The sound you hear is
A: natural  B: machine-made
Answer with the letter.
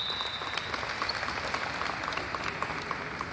A